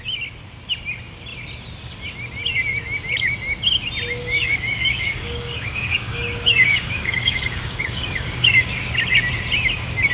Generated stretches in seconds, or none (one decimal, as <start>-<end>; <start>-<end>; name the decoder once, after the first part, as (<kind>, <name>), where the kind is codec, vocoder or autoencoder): 4.2-8.7 (codec, DAC)